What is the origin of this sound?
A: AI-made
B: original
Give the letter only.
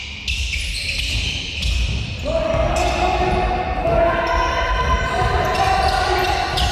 B